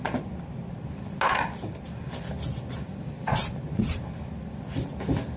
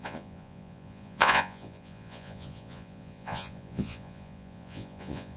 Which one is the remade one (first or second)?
second